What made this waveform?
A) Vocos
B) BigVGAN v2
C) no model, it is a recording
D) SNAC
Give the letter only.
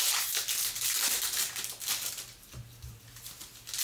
C